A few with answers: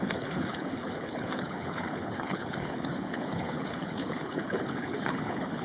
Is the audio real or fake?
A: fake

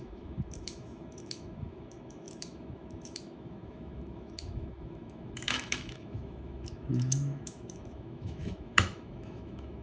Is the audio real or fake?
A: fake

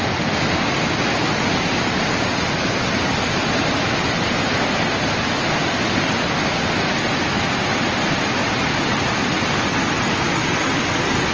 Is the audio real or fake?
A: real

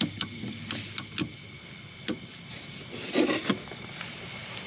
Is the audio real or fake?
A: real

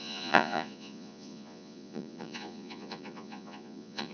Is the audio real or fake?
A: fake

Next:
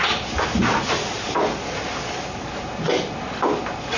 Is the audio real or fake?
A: real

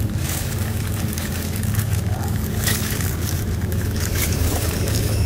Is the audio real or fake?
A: fake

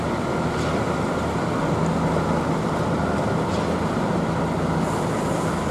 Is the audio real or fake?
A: real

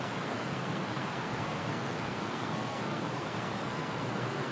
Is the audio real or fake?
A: fake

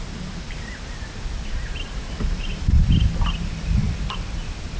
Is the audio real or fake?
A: real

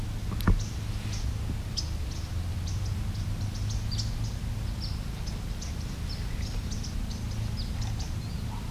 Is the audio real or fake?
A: real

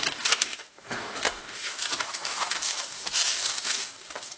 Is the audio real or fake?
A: fake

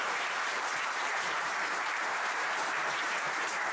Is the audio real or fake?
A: fake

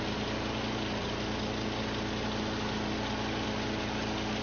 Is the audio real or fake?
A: real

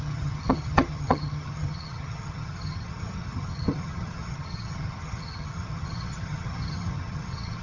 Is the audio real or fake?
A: fake